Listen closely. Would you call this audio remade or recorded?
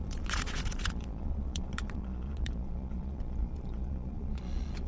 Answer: remade